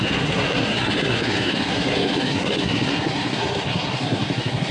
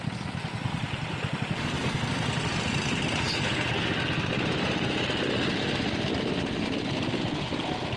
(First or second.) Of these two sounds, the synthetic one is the first